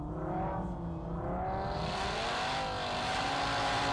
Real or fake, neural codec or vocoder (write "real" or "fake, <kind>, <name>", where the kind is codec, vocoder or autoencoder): real